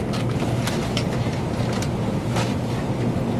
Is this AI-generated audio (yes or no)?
no